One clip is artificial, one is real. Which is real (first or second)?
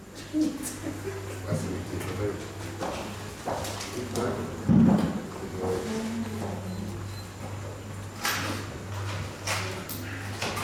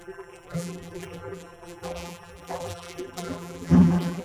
first